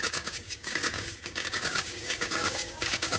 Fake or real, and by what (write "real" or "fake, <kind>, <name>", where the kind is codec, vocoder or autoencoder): fake, codec, DAC